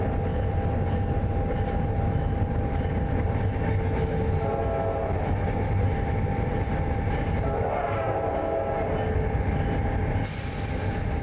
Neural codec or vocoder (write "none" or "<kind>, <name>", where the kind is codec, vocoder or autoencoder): none